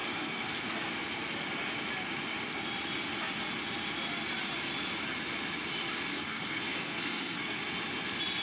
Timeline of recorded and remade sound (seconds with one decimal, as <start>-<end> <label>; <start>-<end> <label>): 0.0-0.5 remade; 0.5-6.1 recorded; 6.1-7.6 remade; 7.6-8.4 recorded